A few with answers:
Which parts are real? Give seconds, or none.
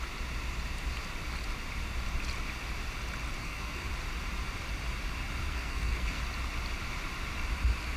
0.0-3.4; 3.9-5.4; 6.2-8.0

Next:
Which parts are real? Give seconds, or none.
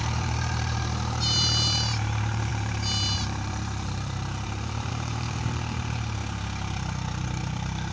6.2-6.7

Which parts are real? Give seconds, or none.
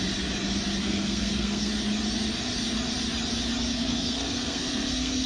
0.0-0.8; 1.7-3.7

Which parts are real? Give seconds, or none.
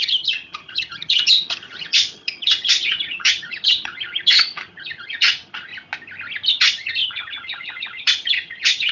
5.7-6.5